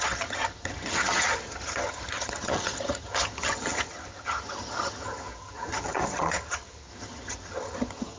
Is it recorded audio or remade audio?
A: remade